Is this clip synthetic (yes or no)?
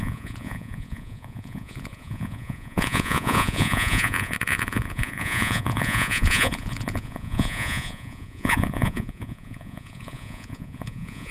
yes